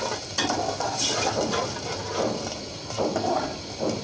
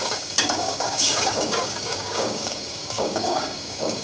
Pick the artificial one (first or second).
second